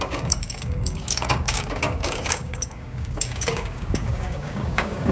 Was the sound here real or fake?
fake